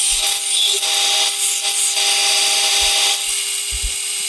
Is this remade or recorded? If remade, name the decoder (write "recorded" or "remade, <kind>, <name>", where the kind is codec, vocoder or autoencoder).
recorded